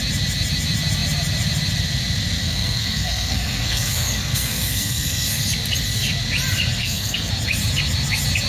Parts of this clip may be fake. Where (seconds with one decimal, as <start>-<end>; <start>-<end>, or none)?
2.4-5.4; 6.8-7.3